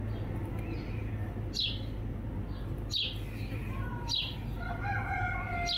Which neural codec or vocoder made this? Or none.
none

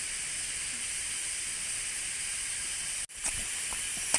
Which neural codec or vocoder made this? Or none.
none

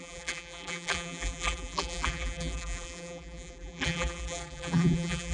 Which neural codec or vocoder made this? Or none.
vocoder, BigVGAN v2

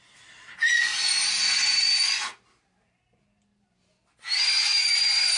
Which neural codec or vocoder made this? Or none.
none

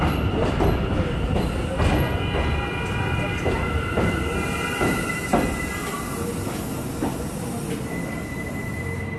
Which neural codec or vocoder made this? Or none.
none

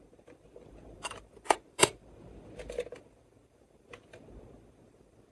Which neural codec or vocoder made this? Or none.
vocoder, BigVGAN v2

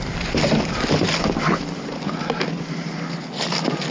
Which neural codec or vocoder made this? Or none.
none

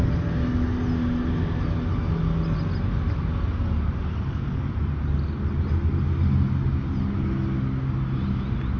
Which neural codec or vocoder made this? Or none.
none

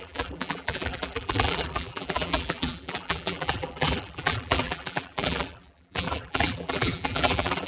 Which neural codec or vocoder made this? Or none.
vocoder, BigVGAN v2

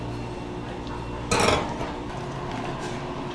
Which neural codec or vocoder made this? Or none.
none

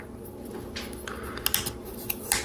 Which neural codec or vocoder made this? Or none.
none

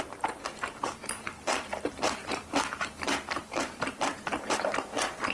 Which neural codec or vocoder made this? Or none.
vocoder, BigVGAN v2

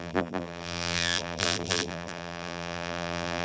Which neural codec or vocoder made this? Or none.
vocoder, BigVGAN v2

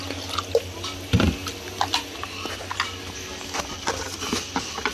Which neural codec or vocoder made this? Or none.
none